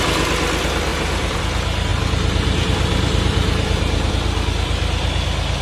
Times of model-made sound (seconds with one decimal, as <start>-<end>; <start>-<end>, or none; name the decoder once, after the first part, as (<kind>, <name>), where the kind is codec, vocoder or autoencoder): 0.9-1.4 (vocoder, BigVGAN v2); 1.9-4.1